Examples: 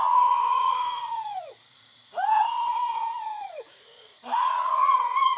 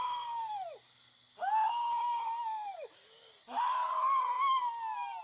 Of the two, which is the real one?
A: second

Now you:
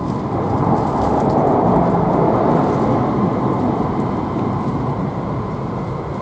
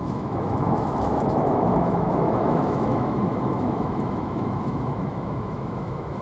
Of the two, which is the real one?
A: first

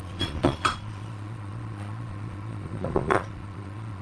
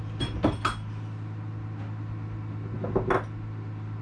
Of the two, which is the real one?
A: second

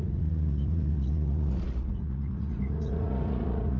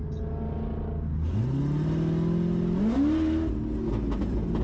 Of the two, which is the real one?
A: second